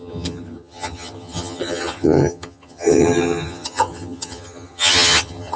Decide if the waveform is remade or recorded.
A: remade